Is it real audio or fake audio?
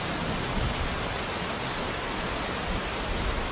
real